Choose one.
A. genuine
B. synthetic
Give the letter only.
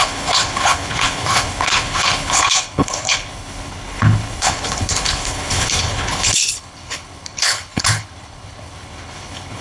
B